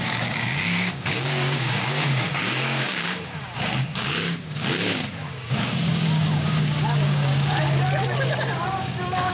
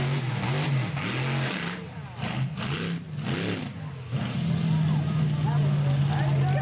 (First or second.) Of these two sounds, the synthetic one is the first